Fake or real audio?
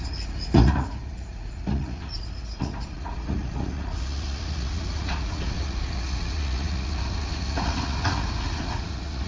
fake